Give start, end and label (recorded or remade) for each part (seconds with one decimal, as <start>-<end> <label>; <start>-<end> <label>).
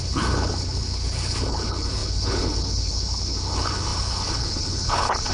0.0-5.3 remade